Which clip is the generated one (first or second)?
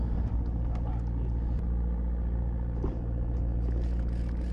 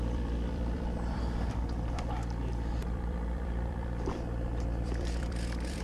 second